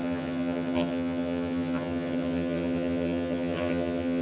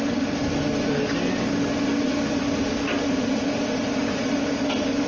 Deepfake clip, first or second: first